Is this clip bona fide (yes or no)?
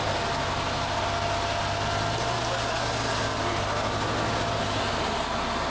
yes